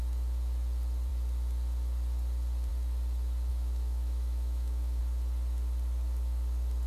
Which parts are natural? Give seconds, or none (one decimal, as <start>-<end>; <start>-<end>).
0.0-3.5; 5.0-6.9